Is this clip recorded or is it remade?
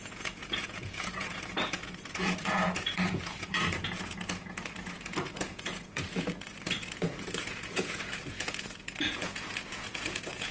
remade